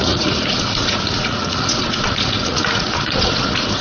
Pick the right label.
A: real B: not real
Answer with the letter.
B